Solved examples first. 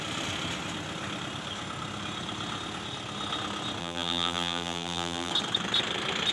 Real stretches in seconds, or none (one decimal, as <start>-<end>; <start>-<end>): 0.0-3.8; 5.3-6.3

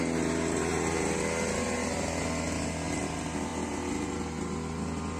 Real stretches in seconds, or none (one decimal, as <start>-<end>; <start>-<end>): 0.7-3.0; 3.5-5.2

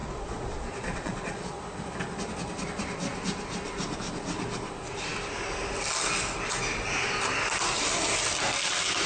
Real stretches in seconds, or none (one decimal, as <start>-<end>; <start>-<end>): 1.6-9.1